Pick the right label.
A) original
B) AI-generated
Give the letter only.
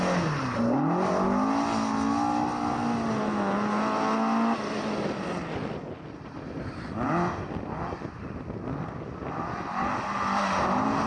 A